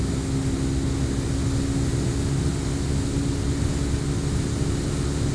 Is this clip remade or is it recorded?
recorded